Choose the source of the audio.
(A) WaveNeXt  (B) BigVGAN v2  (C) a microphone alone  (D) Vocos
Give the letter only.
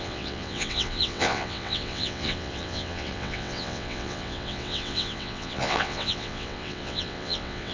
A